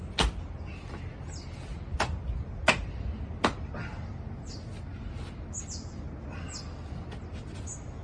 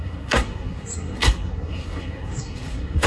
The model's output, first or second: second